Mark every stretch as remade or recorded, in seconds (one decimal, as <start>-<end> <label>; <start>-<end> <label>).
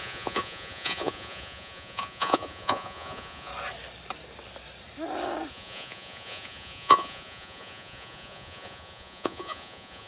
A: 0.0-3.5 remade; 3.5-5.5 recorded; 5.5-10.1 remade